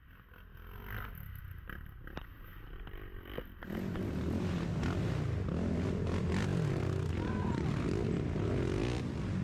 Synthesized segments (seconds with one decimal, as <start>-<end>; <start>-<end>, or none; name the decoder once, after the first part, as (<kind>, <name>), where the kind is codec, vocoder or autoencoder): none